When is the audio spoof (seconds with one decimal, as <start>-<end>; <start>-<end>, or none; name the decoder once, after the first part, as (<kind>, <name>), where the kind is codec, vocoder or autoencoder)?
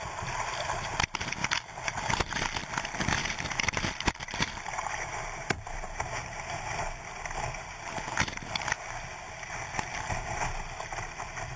1.4-2.4 (vocoder, BigVGAN v2); 3.2-6.8